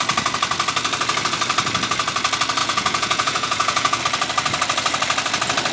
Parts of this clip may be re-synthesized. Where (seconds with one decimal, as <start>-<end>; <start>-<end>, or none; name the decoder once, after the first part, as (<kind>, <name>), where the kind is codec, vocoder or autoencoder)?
2.6-4.0 (vocoder, Vocos)